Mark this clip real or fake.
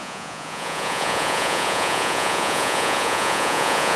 fake